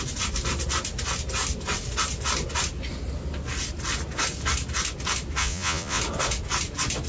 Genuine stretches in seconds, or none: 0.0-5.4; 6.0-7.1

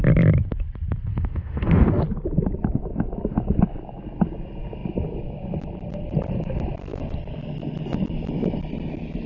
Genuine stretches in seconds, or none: 0.0-1.1; 2.0-9.3

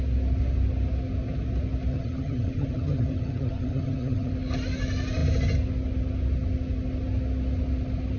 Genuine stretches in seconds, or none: 0.0-1.9; 4.3-8.2

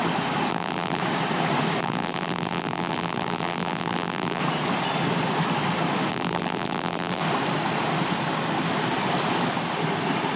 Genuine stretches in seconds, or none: 0.0-0.5; 1.0-1.8; 4.4-6.1; 7.2-10.4

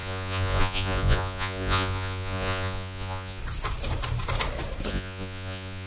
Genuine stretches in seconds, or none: 3.4-4.9

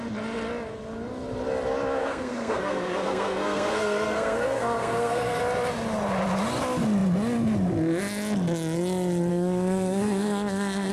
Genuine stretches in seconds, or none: 0.0-2.0; 5.4-9.3

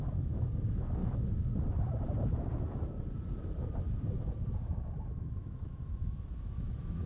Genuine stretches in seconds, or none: 1.0-5.2

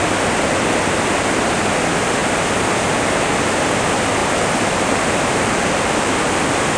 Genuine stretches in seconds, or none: 0.0-4.2